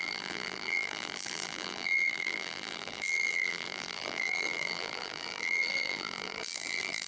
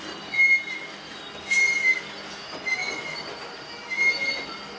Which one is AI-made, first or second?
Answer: first